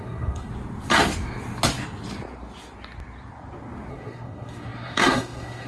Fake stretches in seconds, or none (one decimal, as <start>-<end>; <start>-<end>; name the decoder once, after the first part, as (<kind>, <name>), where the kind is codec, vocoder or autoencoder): 0.0-0.5 (codec, SNAC); 3.9-5.7